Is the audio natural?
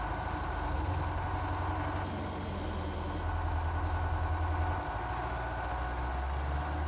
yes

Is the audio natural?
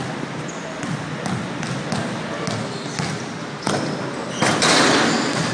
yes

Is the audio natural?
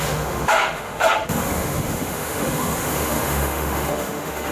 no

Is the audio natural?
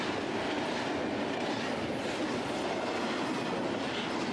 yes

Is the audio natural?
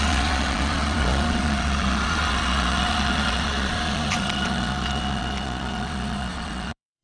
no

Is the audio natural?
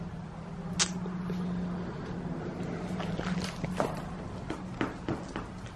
yes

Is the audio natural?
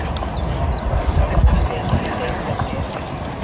yes